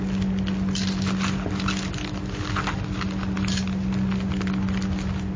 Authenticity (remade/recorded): recorded